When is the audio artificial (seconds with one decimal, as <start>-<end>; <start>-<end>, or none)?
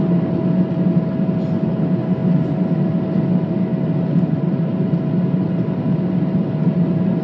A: none